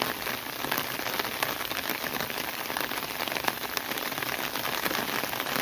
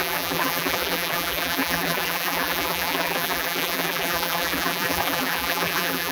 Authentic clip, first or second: first